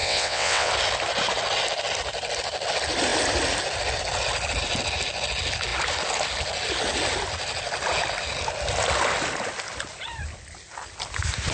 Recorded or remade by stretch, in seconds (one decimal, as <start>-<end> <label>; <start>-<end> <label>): 0.0-0.7 remade; 0.7-11.5 recorded